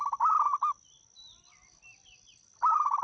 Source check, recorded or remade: recorded